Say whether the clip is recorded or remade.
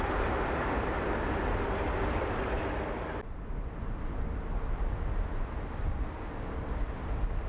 recorded